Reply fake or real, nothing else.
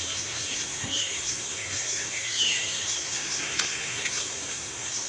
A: fake